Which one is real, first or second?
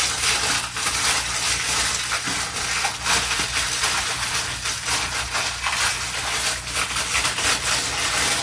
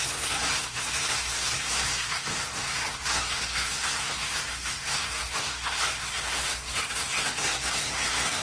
first